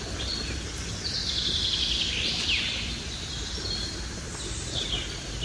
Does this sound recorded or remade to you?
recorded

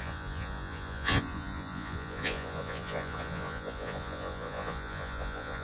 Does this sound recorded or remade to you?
remade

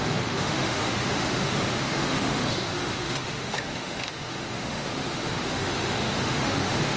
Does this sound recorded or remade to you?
remade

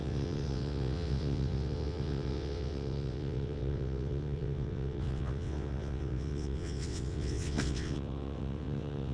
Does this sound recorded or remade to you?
remade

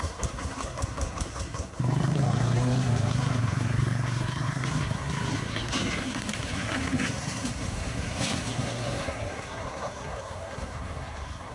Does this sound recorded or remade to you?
remade